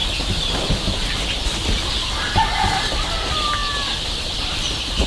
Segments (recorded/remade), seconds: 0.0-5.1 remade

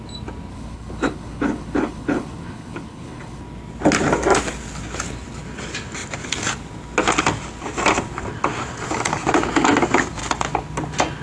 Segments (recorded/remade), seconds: 0.0-0.5 recorded; 0.5-3.4 remade; 3.4-11.2 recorded

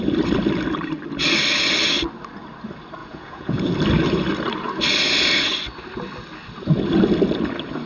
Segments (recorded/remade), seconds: 0.0-3.0 recorded; 3.0-3.7 remade; 3.7-7.9 recorded

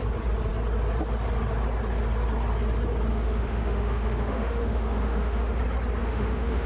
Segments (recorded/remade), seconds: 0.0-3.1 recorded; 3.1-5.6 remade; 5.6-6.0 recorded; 6.0-6.7 remade

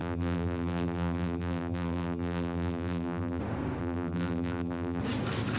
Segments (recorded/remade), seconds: 0.0-3.4 remade; 3.4-3.8 recorded; 3.8-5.0 remade; 5.0-5.6 recorded

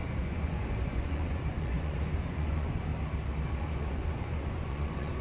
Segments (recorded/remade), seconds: 0.0-2.9 remade; 2.9-3.6 recorded; 3.6-5.2 remade